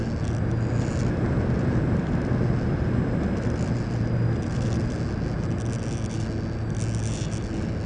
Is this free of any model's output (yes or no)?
yes